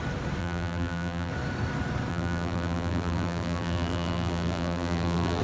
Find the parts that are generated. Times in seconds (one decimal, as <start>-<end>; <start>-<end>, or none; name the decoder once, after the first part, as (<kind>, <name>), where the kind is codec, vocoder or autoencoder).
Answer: 0.4-1.3 (vocoder, BigVGAN v2); 2.1-5.4